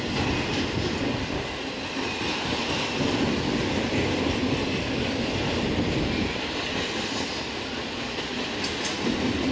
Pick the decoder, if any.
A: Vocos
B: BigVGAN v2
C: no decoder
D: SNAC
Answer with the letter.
B